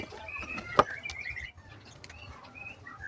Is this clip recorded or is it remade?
recorded